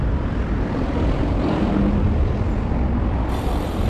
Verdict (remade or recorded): remade